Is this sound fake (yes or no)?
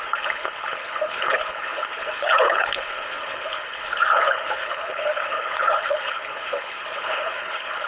yes